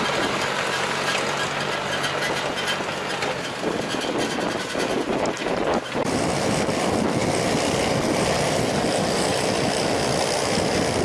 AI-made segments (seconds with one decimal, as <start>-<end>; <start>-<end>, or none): none